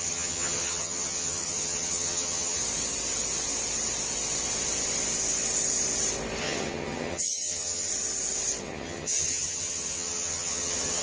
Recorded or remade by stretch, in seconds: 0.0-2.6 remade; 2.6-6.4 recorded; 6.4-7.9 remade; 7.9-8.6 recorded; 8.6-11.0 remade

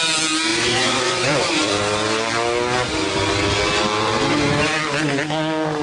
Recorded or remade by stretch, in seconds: 0.0-0.5 recorded; 0.5-1.8 remade; 1.8-5.8 recorded

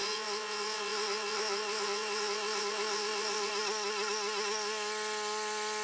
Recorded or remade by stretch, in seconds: 0.0-3.5 remade; 3.5-5.8 recorded

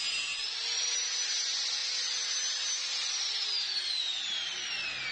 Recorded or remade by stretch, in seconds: 0.0-5.1 recorded